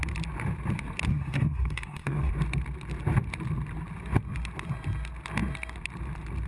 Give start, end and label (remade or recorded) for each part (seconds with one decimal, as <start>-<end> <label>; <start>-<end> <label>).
0.0-1.1 recorded; 1.1-2.3 remade; 2.3-6.5 recorded